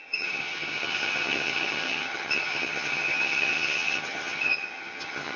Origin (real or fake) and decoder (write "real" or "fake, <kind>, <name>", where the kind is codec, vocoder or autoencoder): fake, vocoder, HiFi-GAN